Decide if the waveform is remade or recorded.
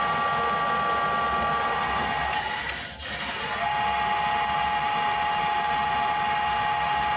recorded